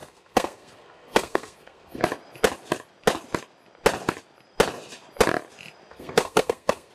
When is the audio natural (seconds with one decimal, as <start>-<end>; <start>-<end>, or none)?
2.0-5.9